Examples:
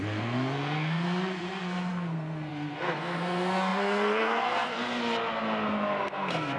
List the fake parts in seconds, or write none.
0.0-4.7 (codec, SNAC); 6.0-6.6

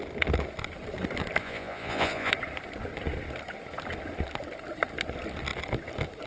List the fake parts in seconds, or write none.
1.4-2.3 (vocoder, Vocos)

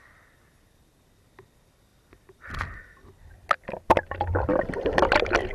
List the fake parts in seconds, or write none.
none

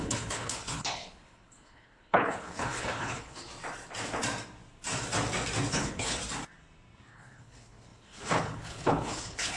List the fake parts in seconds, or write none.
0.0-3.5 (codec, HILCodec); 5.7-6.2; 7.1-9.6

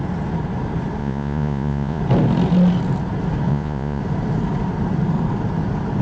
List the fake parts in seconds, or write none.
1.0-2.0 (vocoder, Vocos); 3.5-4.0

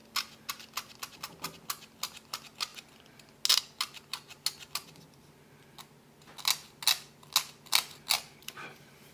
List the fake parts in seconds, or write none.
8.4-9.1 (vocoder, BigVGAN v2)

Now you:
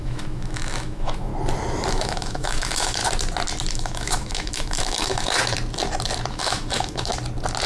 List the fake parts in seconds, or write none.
0.0-1.3 (autoencoder, DAC-VAE); 1.9-3.0; 3.7-5.4; 6.3-7.1